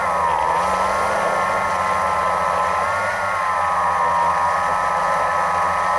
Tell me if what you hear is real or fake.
real